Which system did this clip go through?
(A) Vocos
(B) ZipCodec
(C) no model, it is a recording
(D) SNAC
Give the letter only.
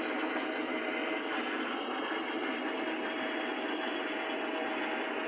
C